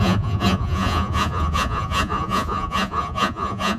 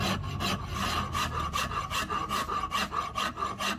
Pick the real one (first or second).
second